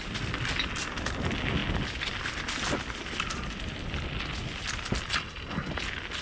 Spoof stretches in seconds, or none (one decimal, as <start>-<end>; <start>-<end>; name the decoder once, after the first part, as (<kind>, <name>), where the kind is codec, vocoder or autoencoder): none

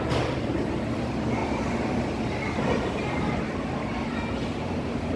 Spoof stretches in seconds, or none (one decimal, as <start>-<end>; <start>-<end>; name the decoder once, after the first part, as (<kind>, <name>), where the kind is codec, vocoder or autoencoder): none

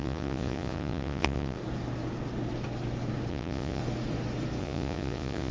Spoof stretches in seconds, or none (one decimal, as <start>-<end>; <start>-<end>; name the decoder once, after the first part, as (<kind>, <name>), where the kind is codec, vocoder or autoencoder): 0.0-1.6 (vocoder, Vocos); 3.3-3.8; 4.6-5.5

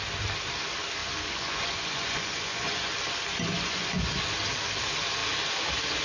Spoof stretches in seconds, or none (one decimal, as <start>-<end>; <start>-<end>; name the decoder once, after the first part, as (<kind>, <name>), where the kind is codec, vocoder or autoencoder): 1.0-2.9 (vocoder, Vocos); 3.5-4.2

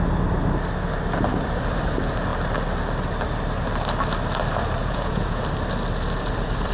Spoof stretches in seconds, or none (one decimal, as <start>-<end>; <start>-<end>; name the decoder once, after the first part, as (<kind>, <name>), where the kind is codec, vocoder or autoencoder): 4.8-5.4 (vocoder, Vocos)

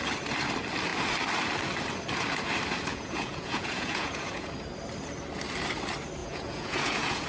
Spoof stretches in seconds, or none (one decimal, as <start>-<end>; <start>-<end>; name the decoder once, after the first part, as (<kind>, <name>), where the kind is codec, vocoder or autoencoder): 2.9-4.5 (vocoder, Vocos); 6.2-7.3

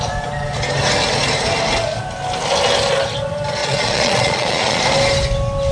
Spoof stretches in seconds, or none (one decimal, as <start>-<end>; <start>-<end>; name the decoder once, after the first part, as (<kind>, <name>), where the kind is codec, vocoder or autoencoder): 3.6-4.8 (vocoder, Vocos)